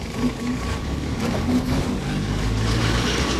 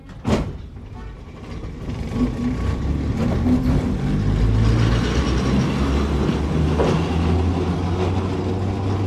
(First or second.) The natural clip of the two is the second